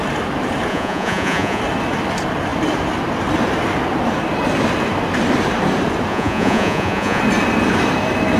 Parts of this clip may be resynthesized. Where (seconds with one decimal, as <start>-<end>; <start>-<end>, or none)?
0.7-1.6; 6.1-7.2

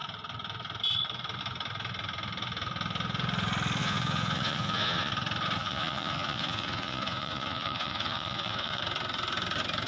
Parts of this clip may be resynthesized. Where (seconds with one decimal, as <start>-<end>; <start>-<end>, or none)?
3.8-5.1; 5.6-8.8

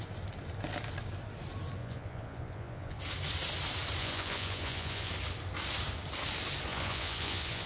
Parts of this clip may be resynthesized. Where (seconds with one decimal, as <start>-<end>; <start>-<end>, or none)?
1.8-3.0; 4.0-5.1; 6.7-7.7

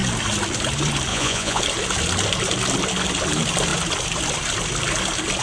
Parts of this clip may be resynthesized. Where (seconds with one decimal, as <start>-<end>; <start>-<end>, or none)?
1.1-1.6

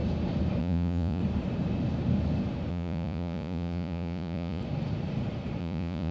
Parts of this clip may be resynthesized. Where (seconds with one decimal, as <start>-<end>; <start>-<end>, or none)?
0.6-1.2; 2.7-4.6; 5.6-6.1

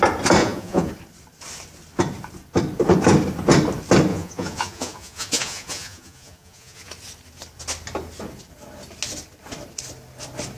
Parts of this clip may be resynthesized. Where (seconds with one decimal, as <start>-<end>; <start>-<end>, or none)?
0.4-0.9; 4.1-6.9